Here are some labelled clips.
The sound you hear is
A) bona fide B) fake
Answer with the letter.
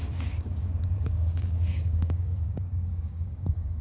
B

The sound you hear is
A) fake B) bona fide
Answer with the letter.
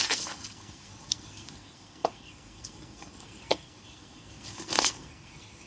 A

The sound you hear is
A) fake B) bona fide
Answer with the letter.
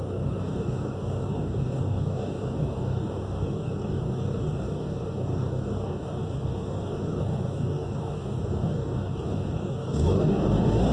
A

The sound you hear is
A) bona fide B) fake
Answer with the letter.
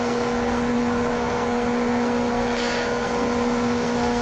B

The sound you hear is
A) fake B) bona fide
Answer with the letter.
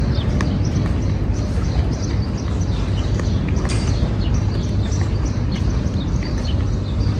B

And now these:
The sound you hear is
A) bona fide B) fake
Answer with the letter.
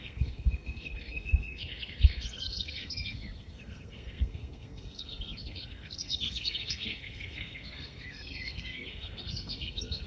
B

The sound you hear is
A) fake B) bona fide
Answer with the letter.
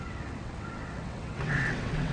A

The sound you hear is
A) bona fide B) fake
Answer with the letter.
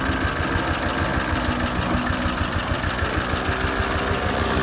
A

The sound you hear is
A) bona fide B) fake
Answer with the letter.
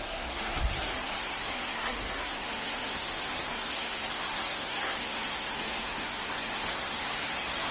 B